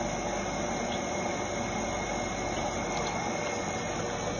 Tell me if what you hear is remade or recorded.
recorded